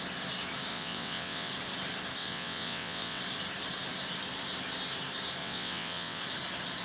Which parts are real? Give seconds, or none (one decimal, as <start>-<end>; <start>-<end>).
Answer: 0.0-0.7; 1.5-2.2; 3.2-5.4; 6.2-6.8